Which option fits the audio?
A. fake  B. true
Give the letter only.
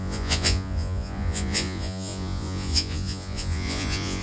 A